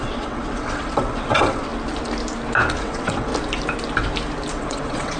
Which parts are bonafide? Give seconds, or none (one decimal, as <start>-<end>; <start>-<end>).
1.7-2.8; 3.3-4.5